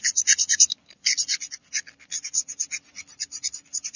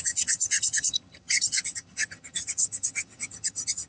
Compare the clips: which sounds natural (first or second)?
first